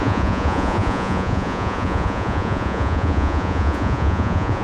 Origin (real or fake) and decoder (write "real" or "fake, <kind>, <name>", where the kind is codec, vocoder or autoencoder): fake, vocoder, Vocos